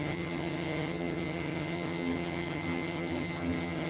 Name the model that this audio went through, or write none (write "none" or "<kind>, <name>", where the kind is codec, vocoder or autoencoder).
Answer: vocoder, HiFi-GAN